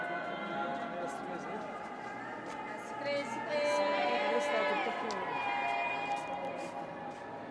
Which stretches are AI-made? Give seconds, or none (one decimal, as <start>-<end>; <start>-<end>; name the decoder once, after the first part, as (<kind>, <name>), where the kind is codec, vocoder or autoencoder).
none